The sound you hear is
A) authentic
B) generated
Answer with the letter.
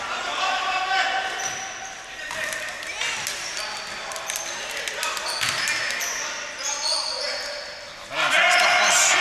A